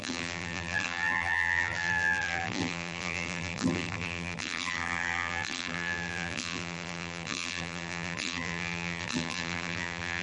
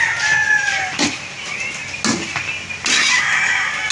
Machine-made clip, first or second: first